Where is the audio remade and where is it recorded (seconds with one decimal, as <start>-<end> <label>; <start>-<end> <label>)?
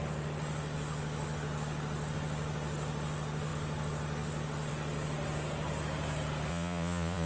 0.0-6.5 recorded; 6.5-7.3 remade